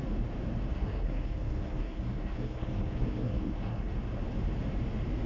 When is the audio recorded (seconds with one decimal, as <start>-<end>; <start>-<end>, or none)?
0.0-0.7; 3.9-5.3